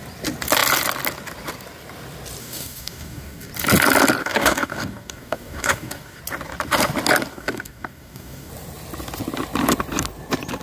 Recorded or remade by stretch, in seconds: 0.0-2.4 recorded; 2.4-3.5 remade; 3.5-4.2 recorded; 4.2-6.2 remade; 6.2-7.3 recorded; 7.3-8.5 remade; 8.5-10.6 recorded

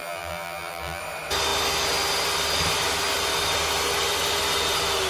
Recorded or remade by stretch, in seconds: 0.0-1.0 remade; 1.0-5.1 recorded

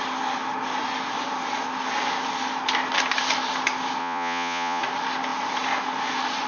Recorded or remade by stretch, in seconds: 0.0-4.0 recorded; 4.0-4.8 remade; 4.8-6.5 recorded

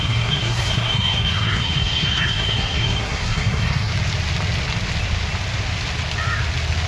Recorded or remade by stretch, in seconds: 0.0-3.9 remade; 3.9-6.9 recorded

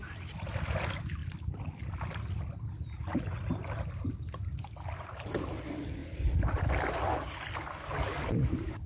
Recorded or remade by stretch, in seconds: 0.0-8.9 recorded